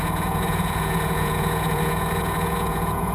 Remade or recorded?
remade